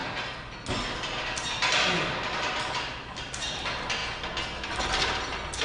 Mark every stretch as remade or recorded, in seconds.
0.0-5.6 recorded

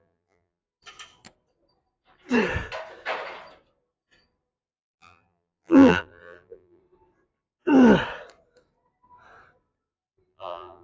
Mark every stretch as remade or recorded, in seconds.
0.0-0.6 remade; 0.6-4.8 recorded; 4.8-6.8 remade; 6.8-10.3 recorded; 10.3-10.8 remade

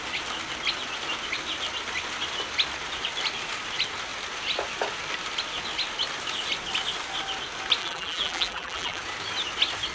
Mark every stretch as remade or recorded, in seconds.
0.0-7.8 recorded; 7.8-9.0 remade; 9.0-9.9 recorded